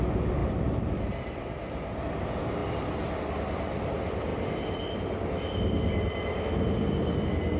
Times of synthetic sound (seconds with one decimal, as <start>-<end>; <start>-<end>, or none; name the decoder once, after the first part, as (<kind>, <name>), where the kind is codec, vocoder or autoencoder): 0.4-2.0 (vocoder, BigVGAN v2)